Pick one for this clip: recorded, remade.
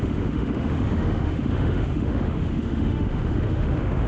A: remade